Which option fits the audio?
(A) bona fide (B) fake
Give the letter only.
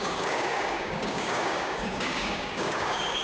B